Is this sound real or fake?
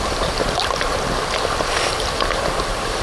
real